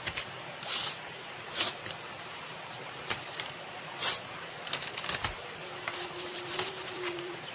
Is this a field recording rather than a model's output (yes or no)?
no